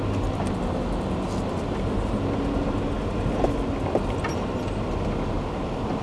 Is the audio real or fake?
real